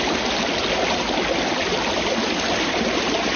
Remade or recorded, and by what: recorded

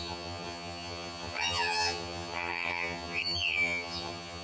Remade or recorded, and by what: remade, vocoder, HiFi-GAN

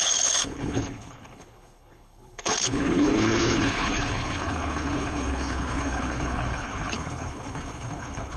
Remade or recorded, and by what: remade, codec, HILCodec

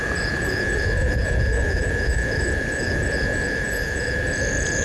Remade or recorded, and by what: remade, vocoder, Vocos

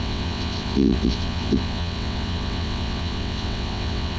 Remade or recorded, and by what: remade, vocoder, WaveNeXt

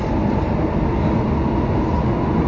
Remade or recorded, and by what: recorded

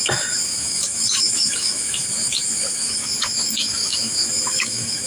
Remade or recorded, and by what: remade, autoencoder, DAC-VAE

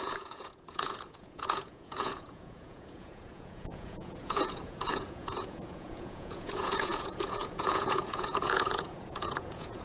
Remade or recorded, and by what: remade, vocoder, Vocos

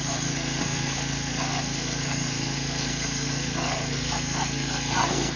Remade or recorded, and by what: remade, codec, SNAC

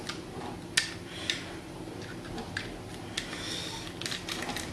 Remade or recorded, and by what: recorded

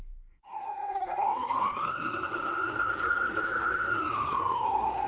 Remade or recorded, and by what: remade, codec, SNAC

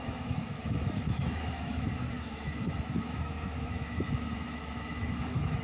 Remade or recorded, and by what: remade, autoencoder, DAC-VAE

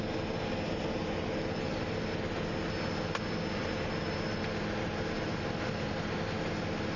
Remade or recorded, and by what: recorded